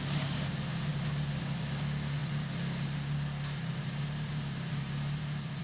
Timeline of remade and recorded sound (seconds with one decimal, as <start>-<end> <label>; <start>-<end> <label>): 0.0-5.6 recorded